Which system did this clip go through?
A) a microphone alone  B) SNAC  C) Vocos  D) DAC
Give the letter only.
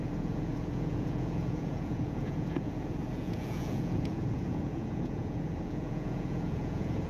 C